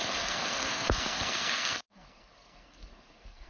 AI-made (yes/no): yes